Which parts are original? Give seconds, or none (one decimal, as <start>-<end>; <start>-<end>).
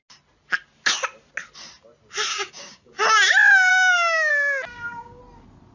0.0-2.3; 3.0-3.7; 4.3-4.7; 5.2-5.7